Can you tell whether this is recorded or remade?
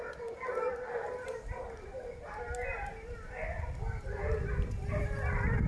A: recorded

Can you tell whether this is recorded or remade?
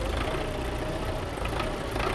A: recorded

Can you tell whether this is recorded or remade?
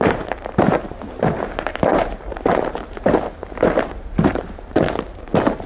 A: remade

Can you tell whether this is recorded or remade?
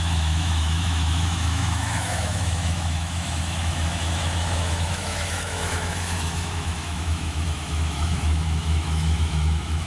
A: remade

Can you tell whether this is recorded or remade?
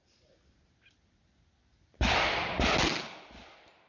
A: recorded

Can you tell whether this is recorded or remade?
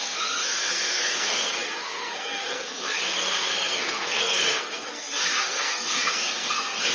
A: remade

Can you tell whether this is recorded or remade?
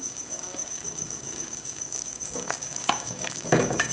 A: remade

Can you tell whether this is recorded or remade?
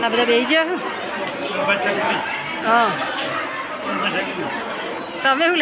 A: recorded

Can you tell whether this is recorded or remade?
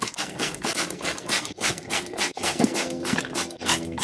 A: remade